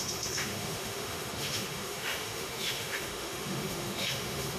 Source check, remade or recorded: remade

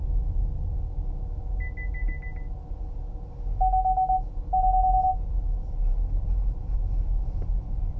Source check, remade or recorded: recorded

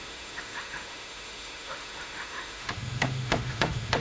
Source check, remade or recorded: remade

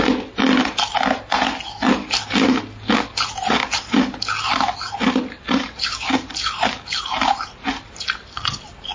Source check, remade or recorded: recorded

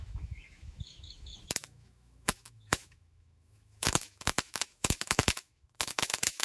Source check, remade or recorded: remade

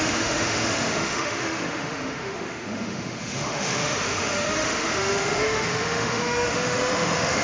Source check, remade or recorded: remade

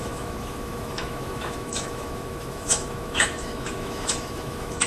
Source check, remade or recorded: remade